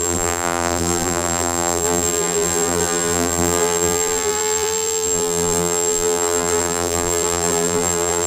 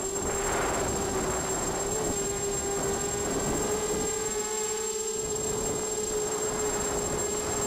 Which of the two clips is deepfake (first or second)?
first